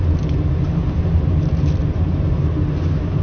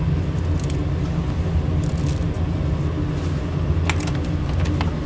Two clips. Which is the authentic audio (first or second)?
second